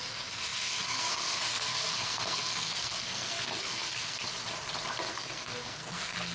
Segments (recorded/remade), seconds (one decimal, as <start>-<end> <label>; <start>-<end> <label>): 0.0-4.2 remade; 4.2-5.1 recorded; 5.1-6.3 remade